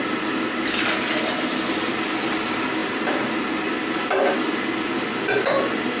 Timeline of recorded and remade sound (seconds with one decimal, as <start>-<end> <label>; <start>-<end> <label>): 0.0-6.0 recorded